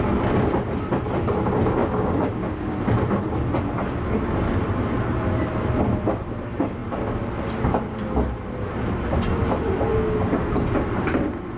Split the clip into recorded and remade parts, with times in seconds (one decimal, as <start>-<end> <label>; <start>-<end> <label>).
0.0-1.8 recorded; 1.8-2.7 remade; 2.7-9.9 recorded; 9.9-10.6 remade; 10.6-11.6 recorded